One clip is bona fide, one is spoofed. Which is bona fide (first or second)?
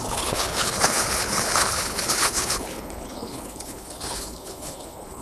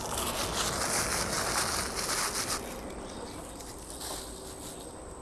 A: second